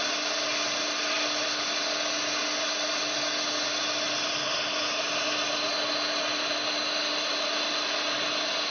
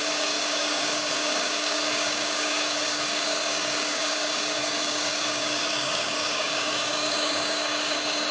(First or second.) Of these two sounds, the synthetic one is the second